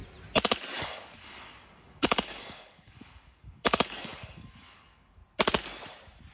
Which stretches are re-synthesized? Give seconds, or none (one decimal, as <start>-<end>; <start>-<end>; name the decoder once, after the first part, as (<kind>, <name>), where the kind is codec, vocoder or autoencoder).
0.8-5.2 (codec, DAC)